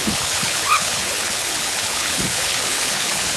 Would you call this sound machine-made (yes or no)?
yes